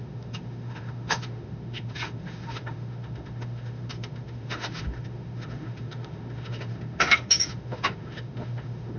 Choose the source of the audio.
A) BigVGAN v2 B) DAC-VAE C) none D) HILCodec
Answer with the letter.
B